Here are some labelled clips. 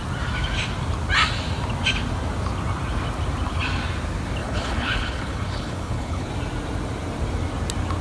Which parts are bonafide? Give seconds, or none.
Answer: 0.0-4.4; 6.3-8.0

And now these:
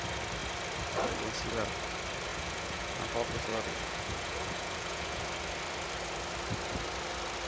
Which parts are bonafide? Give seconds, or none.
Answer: 0.0-2.3; 3.0-3.5; 5.2-7.5

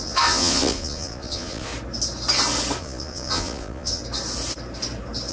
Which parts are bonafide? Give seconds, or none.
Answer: 1.7-2.8; 4.0-5.3

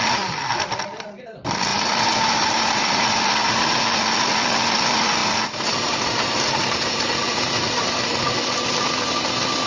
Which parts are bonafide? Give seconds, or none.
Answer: 0.0-1.7; 3.8-5.2; 7.1-9.7

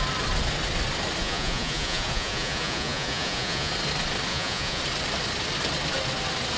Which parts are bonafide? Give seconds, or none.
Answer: 0.0-1.2; 3.7-4.3; 4.8-6.6

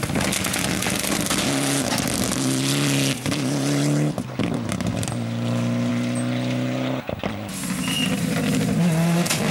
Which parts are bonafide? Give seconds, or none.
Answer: 0.0-9.5

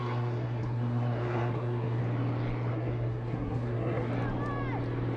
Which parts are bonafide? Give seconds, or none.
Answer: 2.0-2.7; 4.1-5.2